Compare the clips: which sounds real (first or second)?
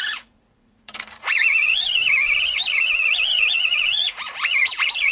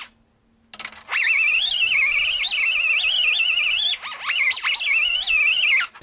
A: second